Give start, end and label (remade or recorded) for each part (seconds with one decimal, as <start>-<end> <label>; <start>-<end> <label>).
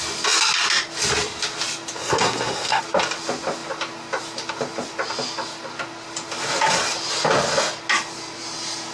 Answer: 0.0-2.0 recorded; 2.0-2.8 remade; 2.8-8.9 recorded